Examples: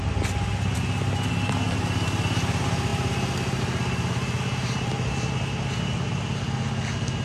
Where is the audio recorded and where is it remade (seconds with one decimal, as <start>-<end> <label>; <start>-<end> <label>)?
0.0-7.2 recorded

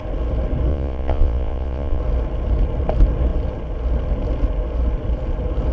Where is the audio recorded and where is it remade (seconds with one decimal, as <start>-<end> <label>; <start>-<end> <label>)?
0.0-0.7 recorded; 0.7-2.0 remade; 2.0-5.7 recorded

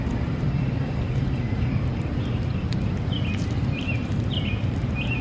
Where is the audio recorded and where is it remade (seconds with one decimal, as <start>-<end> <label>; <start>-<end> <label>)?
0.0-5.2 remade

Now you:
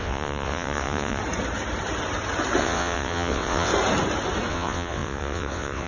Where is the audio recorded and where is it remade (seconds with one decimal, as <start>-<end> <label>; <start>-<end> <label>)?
0.0-1.2 remade; 1.2-2.6 recorded; 2.6-3.7 remade; 3.7-4.5 recorded; 4.5-5.9 remade

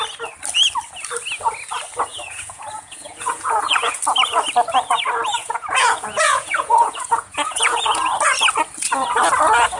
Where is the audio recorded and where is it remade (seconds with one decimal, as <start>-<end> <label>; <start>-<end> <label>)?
0.0-2.1 recorded; 2.1-4.0 remade; 4.0-5.4 recorded; 5.4-8.1 remade; 8.1-9.8 recorded

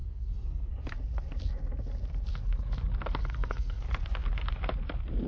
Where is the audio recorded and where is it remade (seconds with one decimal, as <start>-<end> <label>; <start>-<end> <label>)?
0.0-0.7 remade; 0.7-3.2 recorded; 3.2-3.8 remade; 3.8-5.3 recorded

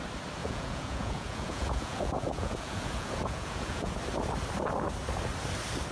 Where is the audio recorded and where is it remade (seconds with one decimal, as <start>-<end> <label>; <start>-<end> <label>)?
0.0-0.4 recorded; 0.4-3.9 remade; 3.9-5.9 recorded

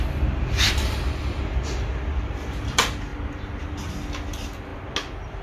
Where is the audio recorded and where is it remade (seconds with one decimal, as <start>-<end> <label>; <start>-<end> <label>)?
0.0-5.4 recorded